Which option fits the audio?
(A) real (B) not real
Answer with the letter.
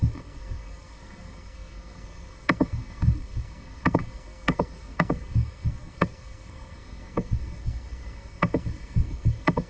B